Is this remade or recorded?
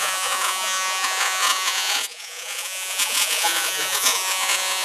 remade